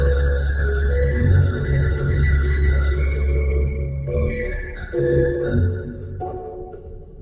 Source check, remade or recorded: remade